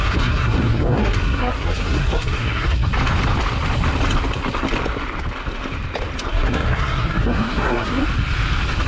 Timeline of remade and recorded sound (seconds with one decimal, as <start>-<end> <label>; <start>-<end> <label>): 0.0-2.9 remade; 2.9-6.3 recorded; 6.3-8.0 remade; 8.0-8.9 recorded